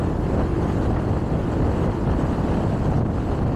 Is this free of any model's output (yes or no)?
yes